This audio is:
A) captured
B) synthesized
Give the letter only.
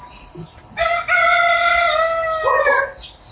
A